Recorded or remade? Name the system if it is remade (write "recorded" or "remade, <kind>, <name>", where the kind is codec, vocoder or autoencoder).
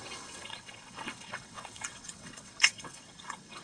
remade, vocoder, WaveNeXt